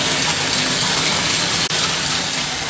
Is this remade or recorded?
recorded